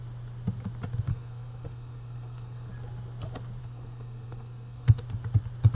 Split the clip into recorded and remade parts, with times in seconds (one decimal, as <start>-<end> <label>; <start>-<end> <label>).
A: 0.0-1.1 recorded; 1.1-2.7 remade; 2.7-3.6 recorded; 3.6-5.0 remade; 5.0-5.7 recorded